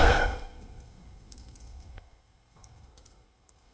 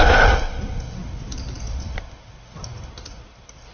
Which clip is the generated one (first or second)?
first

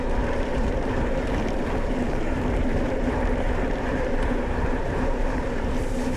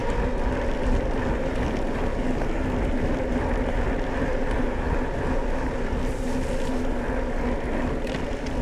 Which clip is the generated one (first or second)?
first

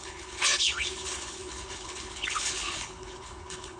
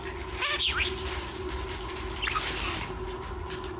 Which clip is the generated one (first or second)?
first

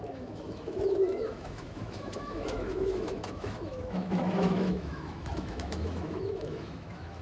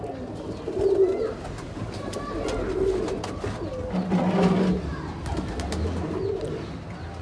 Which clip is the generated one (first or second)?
first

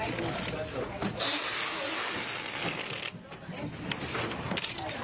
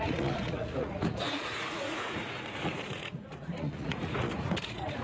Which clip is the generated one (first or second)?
second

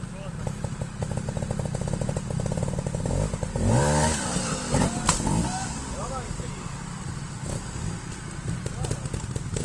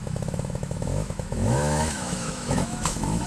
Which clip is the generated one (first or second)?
second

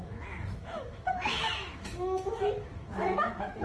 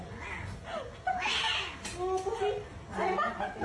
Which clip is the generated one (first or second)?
first